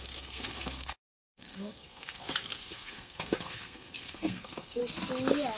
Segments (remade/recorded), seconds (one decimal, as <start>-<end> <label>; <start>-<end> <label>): 0.0-4.8 remade; 4.8-5.6 recorded